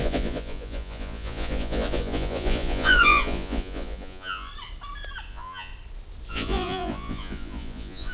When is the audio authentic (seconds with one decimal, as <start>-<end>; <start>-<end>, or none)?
4.5-5.3; 5.7-6.3